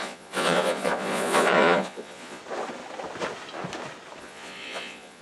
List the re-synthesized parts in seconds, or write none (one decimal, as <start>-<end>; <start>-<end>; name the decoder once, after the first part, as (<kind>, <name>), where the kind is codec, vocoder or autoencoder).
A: 0.0-2.4 (vocoder, Vocos); 4.2-5.2